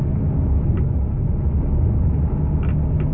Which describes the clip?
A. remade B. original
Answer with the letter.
B